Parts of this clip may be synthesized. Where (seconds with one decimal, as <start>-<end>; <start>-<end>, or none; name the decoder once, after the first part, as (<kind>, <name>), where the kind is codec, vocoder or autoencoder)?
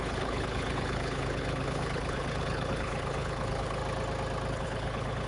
0.0-3.8 (codec, HILCodec); 4.5-5.3